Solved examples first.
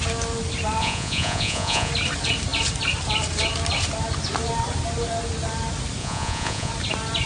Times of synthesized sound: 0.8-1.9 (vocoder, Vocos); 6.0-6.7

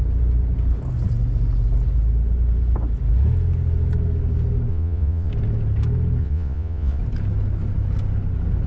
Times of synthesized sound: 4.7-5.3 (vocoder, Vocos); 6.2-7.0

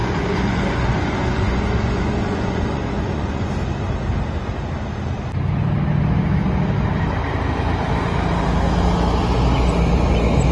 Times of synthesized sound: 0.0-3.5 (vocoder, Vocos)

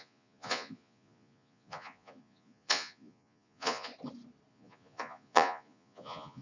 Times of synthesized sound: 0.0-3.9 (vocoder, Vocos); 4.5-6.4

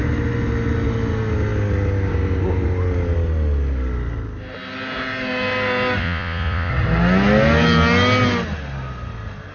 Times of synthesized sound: 6.0-6.7 (vocoder, Vocos)

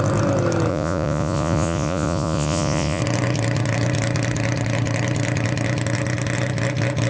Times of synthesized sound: 0.7-3.0 (vocoder, Vocos)

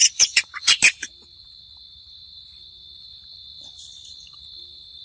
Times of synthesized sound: 0.0-0.8 (vocoder, Vocos)

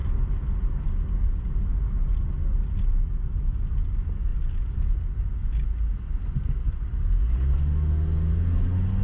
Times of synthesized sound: none